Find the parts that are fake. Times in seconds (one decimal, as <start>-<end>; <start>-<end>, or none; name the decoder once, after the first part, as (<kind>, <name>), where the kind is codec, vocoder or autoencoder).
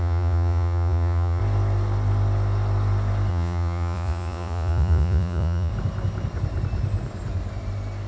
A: 0.0-1.4 (vocoder, Vocos); 3.3-5.7